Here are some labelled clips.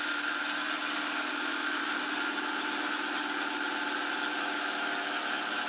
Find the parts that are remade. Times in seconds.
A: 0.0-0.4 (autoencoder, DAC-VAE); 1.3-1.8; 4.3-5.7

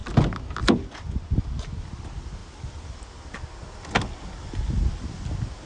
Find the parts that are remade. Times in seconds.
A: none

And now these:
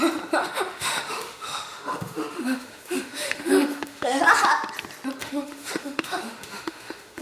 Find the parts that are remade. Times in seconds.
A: 0.4-4.2 (autoencoder, DAC-VAE); 5.2-7.2